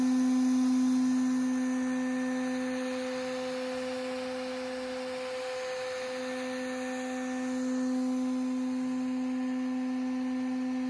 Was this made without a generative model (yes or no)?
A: yes